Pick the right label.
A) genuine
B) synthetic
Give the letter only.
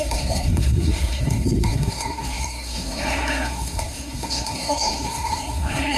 B